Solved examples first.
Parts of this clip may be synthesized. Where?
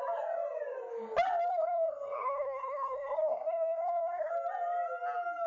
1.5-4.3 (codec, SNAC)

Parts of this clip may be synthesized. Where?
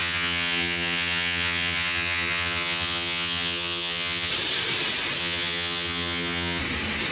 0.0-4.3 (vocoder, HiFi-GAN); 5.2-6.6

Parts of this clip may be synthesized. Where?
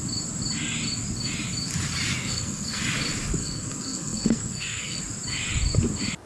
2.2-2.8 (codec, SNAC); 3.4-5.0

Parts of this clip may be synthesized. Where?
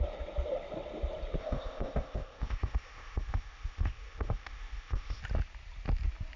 1.4-5.2 (codec, ZipCodec)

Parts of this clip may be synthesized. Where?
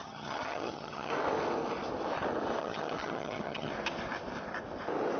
0.0-1.1 (vocoder, HiFi-GAN); 2.6-3.7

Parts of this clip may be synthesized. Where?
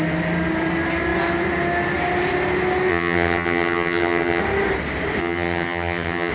2.9-4.4 (vocoder, HiFi-GAN); 5.2-6.3